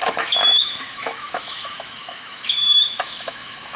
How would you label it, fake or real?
fake